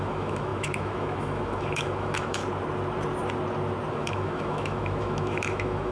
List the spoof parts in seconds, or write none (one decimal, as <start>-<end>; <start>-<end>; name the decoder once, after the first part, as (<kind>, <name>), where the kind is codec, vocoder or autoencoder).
0.0-2.4 (autoencoder, DAC-VAE); 3.9-5.9

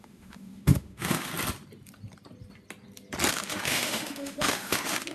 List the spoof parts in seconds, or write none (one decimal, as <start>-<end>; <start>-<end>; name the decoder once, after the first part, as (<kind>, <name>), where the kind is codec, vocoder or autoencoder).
0.0-1.3 (autoencoder, DAC-VAE); 3.3-5.1

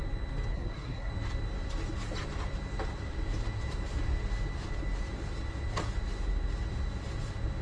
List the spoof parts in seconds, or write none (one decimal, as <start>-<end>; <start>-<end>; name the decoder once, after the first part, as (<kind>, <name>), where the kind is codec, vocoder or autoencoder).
0.5-1.1 (codec, SNAC)

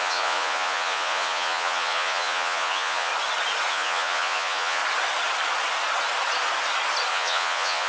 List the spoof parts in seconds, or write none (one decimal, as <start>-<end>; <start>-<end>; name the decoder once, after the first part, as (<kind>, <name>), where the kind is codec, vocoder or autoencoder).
0.0-3.1 (vocoder, Vocos); 3.7-4.8; 7.1-7.9

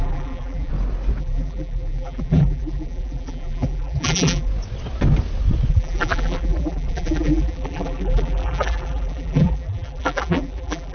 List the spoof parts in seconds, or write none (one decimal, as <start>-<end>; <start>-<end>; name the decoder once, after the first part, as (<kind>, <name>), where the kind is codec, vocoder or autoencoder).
0.0-0.7 (vocoder, BigVGAN v2); 1.2-4.5; 5.7-10.9

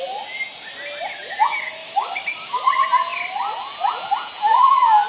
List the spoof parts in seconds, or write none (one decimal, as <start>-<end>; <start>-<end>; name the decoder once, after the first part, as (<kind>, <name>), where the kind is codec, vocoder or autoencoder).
1.8-2.7 (codec, DAC)

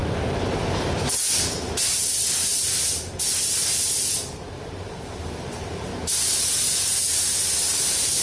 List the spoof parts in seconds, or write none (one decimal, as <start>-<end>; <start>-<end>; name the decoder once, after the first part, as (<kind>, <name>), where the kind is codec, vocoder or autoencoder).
1.0-5.9 (vocoder, BigVGAN v2)